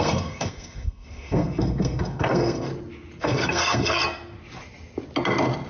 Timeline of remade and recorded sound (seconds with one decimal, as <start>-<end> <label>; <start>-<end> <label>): 0.0-2.7 remade; 2.7-3.2 recorded; 3.2-4.0 remade; 4.0-5.7 recorded

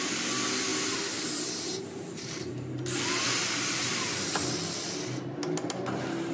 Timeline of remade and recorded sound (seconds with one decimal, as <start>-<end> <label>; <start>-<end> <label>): 0.0-0.7 recorded; 0.7-2.7 remade; 2.7-6.3 recorded

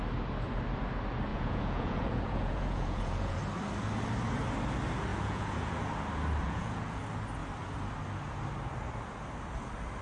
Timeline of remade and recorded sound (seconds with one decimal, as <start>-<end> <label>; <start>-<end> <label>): 0.0-1.3 recorded; 1.3-3.4 remade; 3.4-5.1 recorded; 5.1-5.8 remade; 5.8-6.4 recorded; 6.4-7.0 remade; 7.0-10.0 recorded

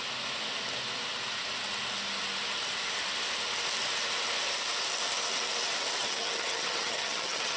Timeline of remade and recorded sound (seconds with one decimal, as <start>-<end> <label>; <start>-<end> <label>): 0.0-6.0 recorded; 6.0-7.6 remade

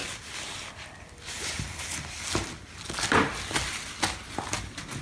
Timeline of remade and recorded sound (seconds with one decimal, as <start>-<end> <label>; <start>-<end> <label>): 0.0-5.0 recorded